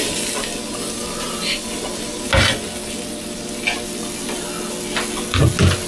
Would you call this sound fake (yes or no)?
no